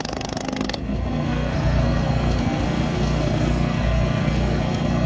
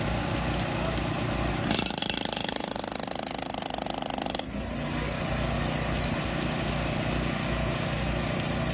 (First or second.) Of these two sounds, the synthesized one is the first